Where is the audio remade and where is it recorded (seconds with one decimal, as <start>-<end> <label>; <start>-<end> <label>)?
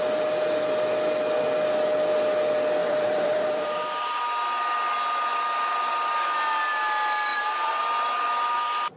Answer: 0.0-2.8 recorded; 2.8-4.2 remade; 4.2-7.3 recorded; 7.3-7.8 remade; 7.8-9.0 recorded